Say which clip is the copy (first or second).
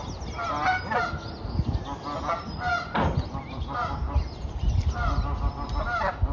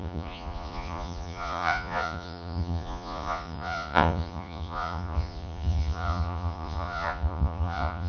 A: second